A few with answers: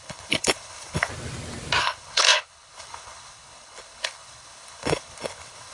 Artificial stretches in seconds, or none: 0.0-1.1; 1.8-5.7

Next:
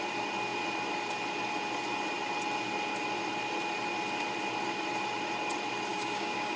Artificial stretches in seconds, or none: 5.9-6.6

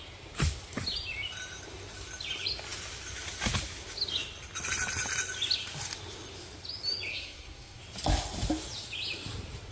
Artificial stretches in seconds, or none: 7.1-7.8